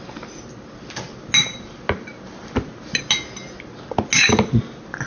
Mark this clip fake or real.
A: real